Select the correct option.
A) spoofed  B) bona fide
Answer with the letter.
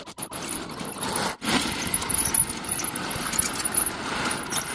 B